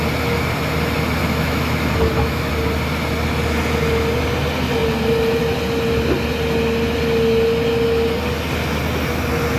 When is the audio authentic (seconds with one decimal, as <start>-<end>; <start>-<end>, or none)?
0.0-1.2; 2.5-9.6